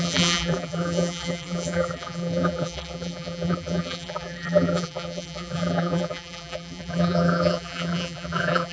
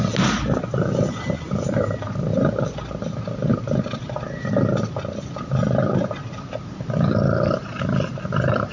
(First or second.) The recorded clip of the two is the second